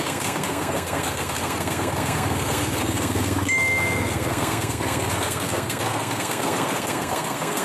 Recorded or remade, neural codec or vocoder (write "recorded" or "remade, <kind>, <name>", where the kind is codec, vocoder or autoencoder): remade, codec, SNAC